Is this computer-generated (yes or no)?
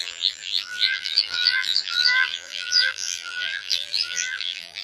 yes